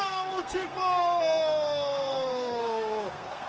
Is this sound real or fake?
fake